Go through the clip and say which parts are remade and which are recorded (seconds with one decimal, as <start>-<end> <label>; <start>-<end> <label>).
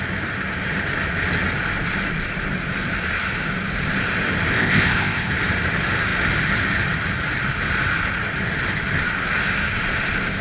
0.0-4.6 recorded; 4.6-5.3 remade; 5.3-10.4 recorded